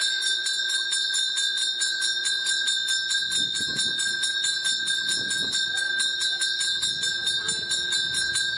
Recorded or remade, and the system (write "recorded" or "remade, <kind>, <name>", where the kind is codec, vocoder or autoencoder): recorded